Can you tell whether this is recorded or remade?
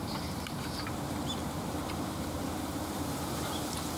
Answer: remade